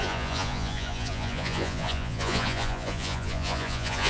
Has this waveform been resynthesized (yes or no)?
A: yes